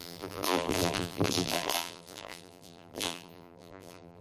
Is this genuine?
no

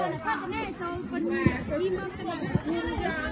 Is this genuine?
yes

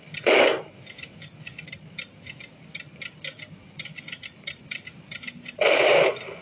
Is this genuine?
yes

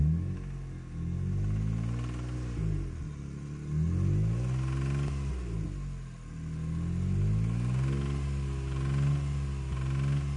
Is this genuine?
yes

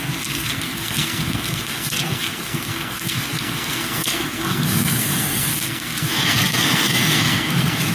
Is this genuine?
no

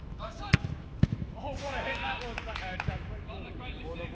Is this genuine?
no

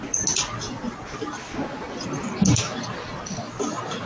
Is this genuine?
yes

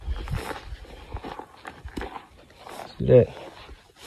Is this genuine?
yes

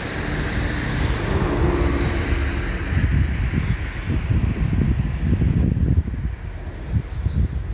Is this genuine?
yes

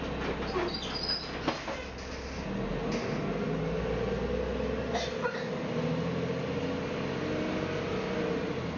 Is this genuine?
yes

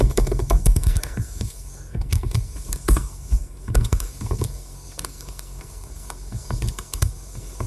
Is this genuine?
no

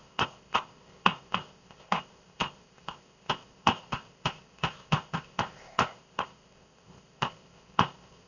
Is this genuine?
no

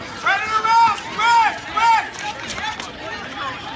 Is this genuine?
yes